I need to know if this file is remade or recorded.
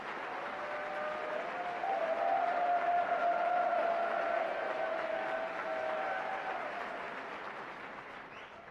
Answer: recorded